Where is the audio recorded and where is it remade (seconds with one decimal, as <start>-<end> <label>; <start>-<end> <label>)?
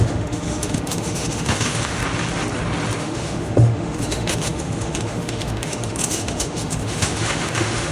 0.0-2.0 remade; 2.0-3.0 recorded; 3.0-7.9 remade